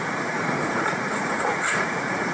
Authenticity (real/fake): fake